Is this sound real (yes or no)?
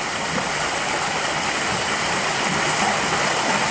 yes